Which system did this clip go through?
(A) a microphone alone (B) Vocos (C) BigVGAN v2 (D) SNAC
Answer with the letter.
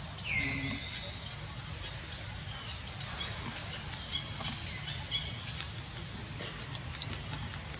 A